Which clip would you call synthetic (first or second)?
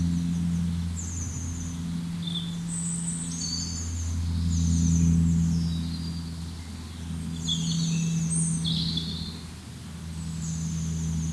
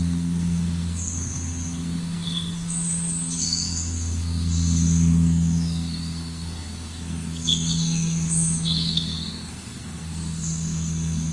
second